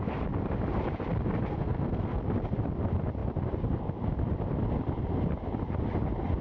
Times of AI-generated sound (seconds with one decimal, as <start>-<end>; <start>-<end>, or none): 1.5-2.2